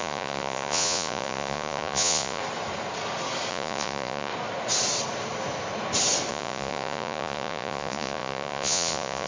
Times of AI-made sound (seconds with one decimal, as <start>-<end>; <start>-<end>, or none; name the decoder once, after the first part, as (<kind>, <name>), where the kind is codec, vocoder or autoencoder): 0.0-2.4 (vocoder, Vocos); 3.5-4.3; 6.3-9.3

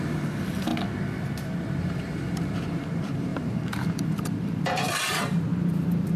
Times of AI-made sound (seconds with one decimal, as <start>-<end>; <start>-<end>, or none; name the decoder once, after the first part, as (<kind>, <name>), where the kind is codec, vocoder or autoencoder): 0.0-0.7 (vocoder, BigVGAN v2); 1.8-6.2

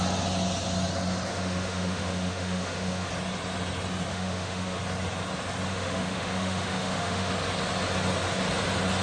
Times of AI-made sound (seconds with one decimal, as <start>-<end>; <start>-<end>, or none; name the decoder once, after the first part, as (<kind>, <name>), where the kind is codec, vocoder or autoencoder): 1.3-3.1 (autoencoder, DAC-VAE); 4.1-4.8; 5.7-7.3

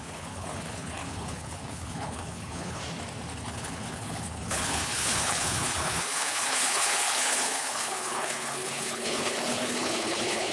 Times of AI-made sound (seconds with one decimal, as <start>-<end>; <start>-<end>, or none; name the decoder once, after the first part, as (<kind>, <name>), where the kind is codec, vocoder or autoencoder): 0.0-2.8 (codec, HILCodec); 3.4-10.5